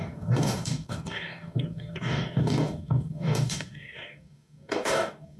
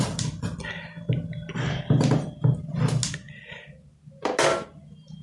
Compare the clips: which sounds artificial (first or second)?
first